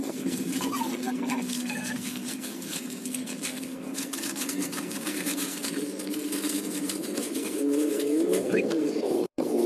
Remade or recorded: remade